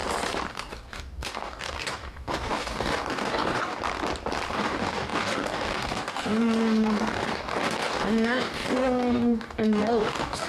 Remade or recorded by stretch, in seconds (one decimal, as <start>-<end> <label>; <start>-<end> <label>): 0.0-0.5 recorded; 0.5-3.8 remade; 3.8-4.5 recorded; 4.5-10.5 remade